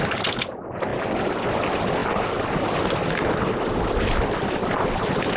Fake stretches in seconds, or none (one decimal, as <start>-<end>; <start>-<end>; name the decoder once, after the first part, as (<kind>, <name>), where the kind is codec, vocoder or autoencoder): none